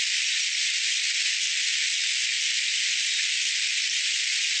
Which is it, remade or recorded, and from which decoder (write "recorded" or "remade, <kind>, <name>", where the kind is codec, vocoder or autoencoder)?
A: recorded